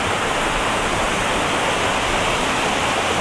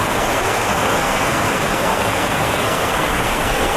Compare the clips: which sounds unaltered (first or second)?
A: first